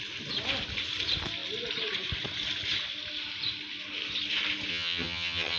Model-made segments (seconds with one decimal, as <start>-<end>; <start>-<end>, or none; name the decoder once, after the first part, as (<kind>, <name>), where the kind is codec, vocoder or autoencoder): 4.7-5.6 (vocoder, HiFi-GAN)